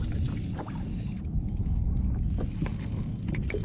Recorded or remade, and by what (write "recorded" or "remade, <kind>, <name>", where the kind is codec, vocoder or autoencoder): recorded